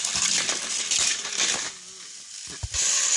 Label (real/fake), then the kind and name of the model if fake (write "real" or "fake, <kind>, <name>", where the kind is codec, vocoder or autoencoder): real